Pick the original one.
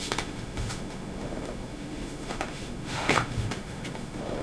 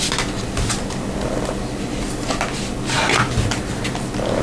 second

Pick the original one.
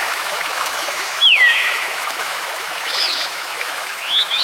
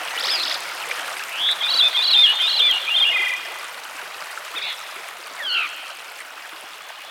second